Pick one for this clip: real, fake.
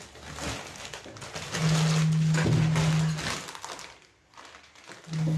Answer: real